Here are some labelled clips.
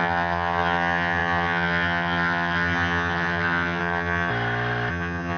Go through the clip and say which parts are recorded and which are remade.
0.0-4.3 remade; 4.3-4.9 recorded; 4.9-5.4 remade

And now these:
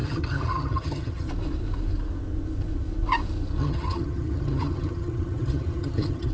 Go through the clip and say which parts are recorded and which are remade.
0.0-1.3 remade; 1.3-3.6 recorded; 3.6-6.3 remade

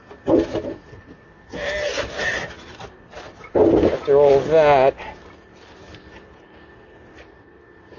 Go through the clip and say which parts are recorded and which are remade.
0.0-8.0 recorded